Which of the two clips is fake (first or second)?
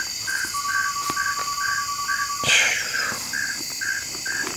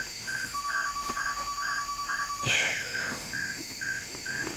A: second